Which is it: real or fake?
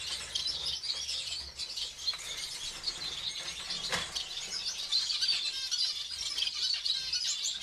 real